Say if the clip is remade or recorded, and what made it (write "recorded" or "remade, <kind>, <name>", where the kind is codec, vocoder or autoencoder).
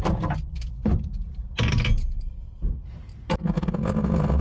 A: recorded